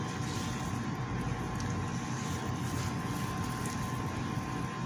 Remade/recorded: recorded